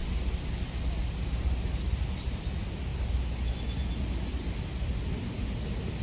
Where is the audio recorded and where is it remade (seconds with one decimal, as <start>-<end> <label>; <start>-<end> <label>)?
0.0-6.0 recorded